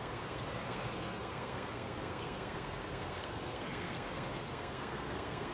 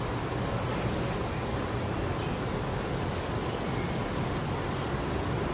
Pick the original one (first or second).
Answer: second